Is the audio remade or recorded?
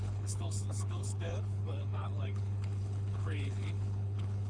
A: remade